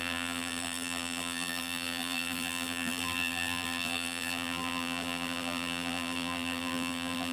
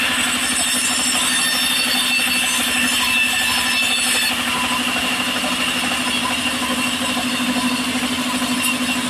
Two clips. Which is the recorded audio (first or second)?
second